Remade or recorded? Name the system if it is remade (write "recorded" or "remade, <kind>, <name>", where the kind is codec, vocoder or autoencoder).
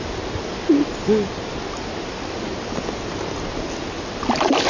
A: recorded